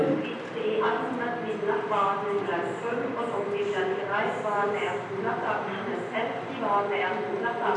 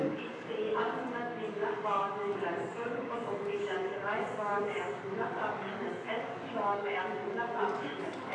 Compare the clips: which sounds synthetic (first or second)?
second